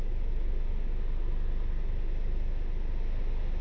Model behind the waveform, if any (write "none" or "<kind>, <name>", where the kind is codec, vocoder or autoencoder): none